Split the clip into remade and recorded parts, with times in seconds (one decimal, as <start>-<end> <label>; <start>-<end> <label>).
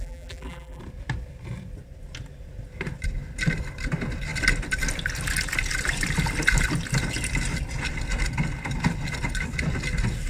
0.0-0.8 remade; 0.8-10.3 recorded